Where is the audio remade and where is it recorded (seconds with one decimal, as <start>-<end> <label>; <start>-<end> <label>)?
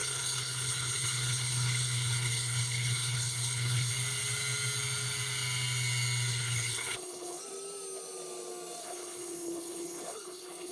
0.0-3.9 remade; 3.9-6.3 recorded; 6.3-7.4 remade; 7.4-8.8 recorded; 8.8-10.7 remade